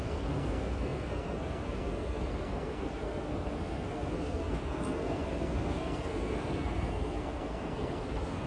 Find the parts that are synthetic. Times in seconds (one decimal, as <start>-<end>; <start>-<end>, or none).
0.0-8.5